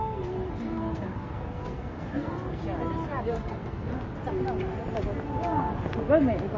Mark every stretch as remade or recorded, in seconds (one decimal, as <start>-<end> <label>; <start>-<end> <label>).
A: 0.0-2.6 remade; 2.6-3.2 recorded; 3.2-3.9 remade; 3.9-6.6 recorded